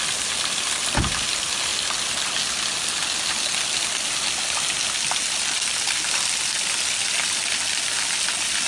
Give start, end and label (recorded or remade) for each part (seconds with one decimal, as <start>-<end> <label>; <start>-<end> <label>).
0.0-8.7 recorded